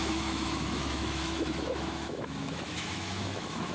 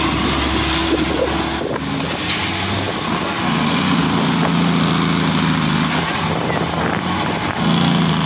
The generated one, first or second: first